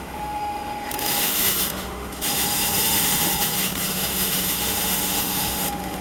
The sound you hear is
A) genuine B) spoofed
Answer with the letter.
B